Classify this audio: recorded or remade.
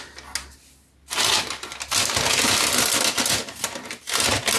recorded